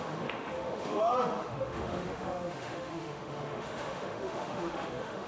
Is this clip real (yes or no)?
no